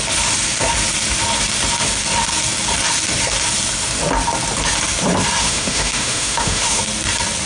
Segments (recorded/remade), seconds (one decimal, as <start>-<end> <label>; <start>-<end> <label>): 0.0-5.4 recorded; 5.4-6.8 remade; 6.8-7.5 recorded